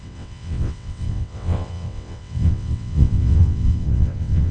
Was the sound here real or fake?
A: fake